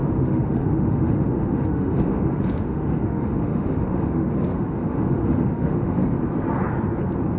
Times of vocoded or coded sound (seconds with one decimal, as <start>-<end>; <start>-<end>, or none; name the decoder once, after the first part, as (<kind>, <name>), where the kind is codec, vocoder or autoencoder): 0.0-6.0 (autoencoder, DAC-VAE)